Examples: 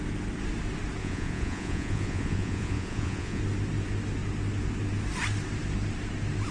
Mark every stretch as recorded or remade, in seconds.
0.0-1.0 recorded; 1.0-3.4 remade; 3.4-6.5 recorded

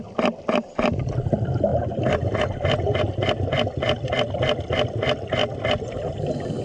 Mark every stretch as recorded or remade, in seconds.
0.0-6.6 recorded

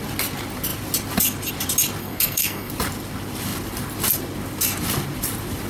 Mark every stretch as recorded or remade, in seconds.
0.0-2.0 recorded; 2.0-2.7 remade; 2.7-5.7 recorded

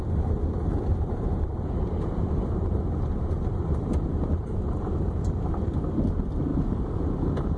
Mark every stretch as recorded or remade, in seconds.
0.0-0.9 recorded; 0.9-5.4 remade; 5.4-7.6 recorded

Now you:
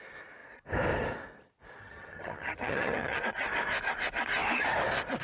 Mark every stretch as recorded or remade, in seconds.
0.0-1.8 recorded; 1.8-3.2 remade; 3.2-5.2 recorded

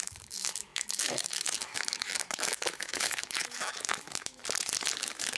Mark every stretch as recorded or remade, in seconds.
0.0-4.4 remade; 4.4-5.0 recorded; 5.0-5.4 remade

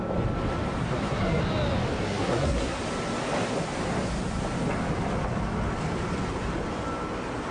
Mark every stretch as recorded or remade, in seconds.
0.0-0.8 recorded; 0.8-1.4 remade; 1.4-2.0 recorded; 2.0-2.8 remade; 2.8-7.5 recorded

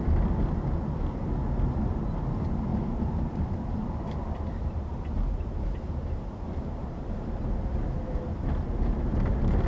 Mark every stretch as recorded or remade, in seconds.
0.0-2.7 recorded; 2.7-7.3 remade; 7.3-9.7 recorded